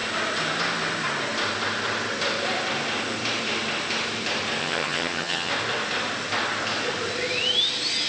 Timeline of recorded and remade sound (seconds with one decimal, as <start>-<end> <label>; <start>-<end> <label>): 0.0-4.6 recorded; 4.6-5.5 remade; 5.5-8.1 recorded